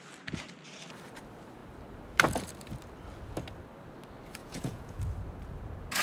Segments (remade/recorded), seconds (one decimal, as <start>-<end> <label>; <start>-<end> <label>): 0.0-4.4 recorded; 4.4-5.0 remade; 5.0-6.0 recorded